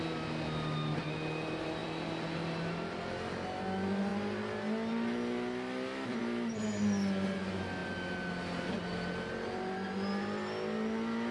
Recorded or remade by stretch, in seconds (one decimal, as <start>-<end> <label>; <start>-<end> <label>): 0.0-4.1 recorded; 4.1-6.2 remade; 6.2-7.8 recorded; 7.8-8.3 remade; 8.3-11.3 recorded